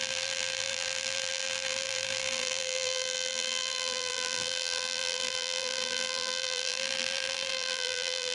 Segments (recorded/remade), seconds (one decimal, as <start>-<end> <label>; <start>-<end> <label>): 0.0-8.3 remade

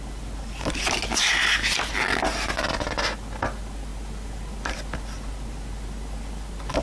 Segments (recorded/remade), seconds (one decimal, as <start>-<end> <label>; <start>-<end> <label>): 0.0-6.8 recorded

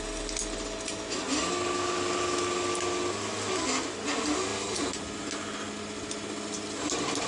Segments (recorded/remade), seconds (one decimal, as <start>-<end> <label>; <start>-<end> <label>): 0.0-7.3 recorded

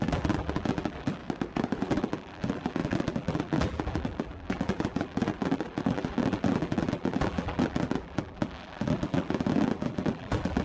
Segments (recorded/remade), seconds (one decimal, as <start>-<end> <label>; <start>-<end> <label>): 0.0-1.2 remade; 1.2-1.8 recorded; 1.8-10.6 remade

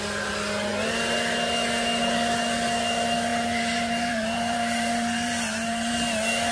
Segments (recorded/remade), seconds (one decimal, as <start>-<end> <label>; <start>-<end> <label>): 0.0-3.3 recorded; 3.3-5.9 remade; 5.9-6.5 recorded

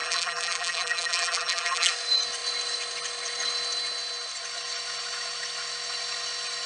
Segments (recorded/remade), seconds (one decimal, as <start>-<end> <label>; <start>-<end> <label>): 0.0-1.9 remade; 1.9-6.7 recorded

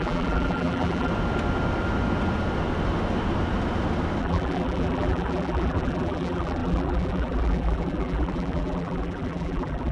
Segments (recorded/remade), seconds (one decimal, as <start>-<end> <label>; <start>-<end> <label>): 0.0-1.1 remade; 1.1-4.2 recorded; 4.2-9.9 remade

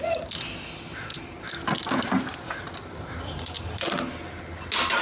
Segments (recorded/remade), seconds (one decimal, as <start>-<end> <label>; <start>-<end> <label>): 0.0-1.1 recorded; 1.1-4.1 remade; 4.1-5.0 recorded